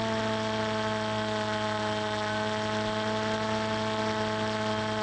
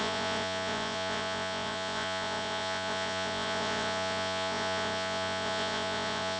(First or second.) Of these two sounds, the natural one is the first